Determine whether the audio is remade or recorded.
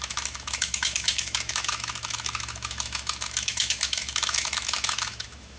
remade